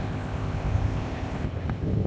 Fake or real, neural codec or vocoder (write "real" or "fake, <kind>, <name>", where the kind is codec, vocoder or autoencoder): fake, codec, ZipCodec